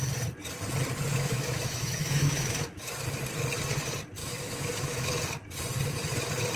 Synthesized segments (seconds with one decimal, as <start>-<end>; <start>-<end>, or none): 1.1-2.9; 4.2-5.2